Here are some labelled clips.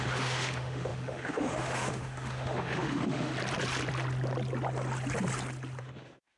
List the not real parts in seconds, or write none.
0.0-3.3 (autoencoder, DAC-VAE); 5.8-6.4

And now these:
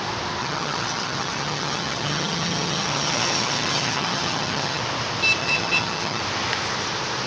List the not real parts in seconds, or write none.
0.4-4.8 (vocoder, HiFi-GAN); 5.4-6.2

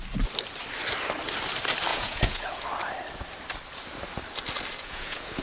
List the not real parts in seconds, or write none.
1.9-2.6 (vocoder, Vocos); 4.7-5.4

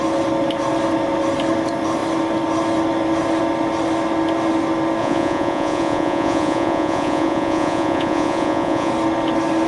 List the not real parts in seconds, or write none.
5.0-8.9 (vocoder, Vocos)

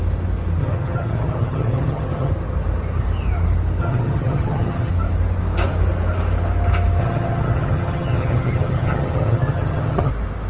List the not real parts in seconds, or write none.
0.6-2.3 (vocoder, HiFi-GAN); 3.8-4.9; 7.0-10.1

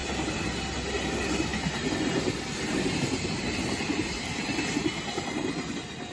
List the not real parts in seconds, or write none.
none

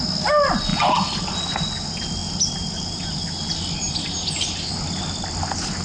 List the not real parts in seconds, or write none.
none